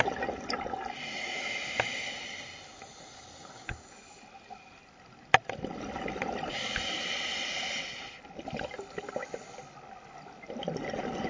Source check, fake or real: real